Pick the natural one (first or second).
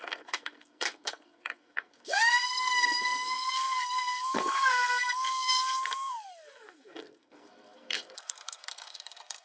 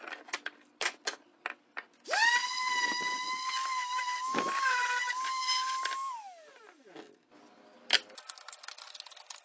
second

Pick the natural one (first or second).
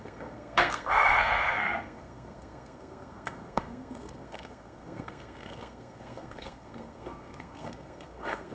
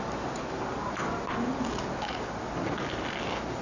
second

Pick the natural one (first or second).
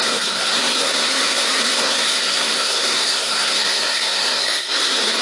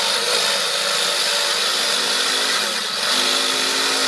second